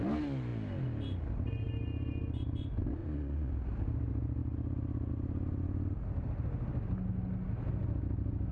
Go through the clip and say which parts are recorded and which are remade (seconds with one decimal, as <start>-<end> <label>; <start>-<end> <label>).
0.0-3.0 recorded; 3.0-3.5 remade; 3.5-8.5 recorded